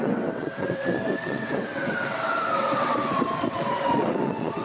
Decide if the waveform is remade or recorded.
remade